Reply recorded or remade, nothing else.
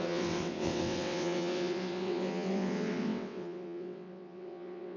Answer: remade